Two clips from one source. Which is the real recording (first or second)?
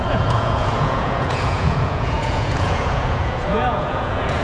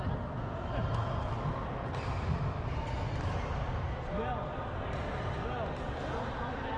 second